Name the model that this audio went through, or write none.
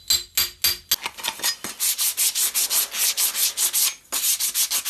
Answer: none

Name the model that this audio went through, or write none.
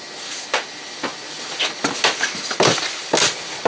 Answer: none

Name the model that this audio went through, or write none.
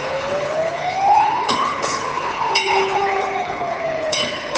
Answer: codec, HILCodec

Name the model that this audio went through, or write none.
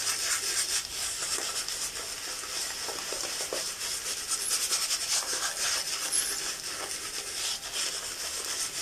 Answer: none